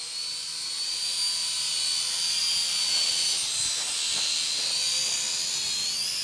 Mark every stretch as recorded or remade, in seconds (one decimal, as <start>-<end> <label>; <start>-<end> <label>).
0.0-6.2 recorded